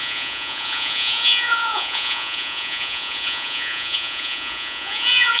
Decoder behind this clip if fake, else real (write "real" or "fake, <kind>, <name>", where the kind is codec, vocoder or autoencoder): fake, vocoder, Vocos